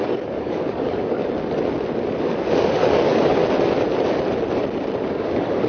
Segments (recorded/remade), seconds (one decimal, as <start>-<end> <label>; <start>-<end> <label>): 0.0-1.2 remade; 1.2-2.2 recorded; 2.2-3.4 remade; 3.4-5.1 recorded; 5.1-5.7 remade